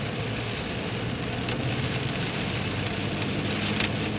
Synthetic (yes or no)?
no